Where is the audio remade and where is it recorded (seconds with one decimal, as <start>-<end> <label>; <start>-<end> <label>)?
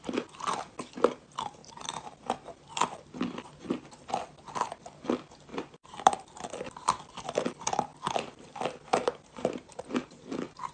0.0-1.6 recorded; 1.6-2.2 remade; 2.2-5.5 recorded; 5.5-7.0 remade; 7.0-7.9 recorded; 7.9-8.5 remade; 8.5-8.9 recorded; 8.9-10.7 remade